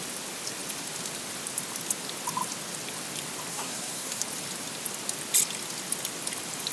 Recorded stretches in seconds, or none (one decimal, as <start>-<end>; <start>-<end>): 0.0-3.5; 4.2-6.7